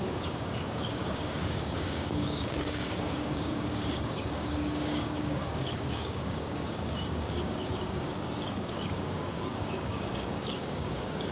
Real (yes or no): no